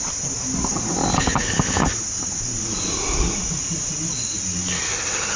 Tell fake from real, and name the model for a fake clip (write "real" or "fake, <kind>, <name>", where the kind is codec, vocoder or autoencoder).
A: real